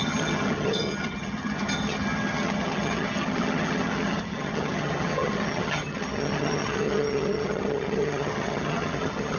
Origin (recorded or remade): remade